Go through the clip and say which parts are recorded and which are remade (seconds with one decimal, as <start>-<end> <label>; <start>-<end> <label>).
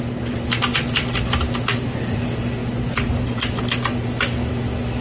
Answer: 0.0-5.0 recorded